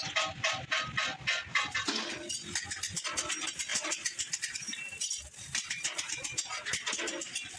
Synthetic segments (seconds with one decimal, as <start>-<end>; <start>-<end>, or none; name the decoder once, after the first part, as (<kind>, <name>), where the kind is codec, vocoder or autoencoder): none